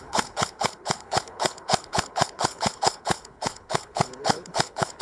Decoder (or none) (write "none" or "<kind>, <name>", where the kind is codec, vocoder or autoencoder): codec, HILCodec